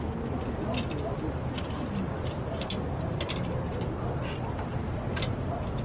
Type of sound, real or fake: real